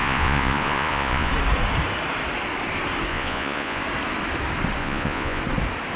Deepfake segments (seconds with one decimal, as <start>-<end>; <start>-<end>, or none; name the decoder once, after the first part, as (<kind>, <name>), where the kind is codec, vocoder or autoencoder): 0.0-1.3 (vocoder, Vocos); 3.1-3.8; 4.8-5.4